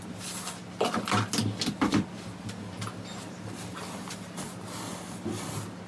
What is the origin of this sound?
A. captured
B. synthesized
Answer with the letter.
A